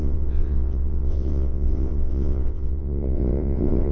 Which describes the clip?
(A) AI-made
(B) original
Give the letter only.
A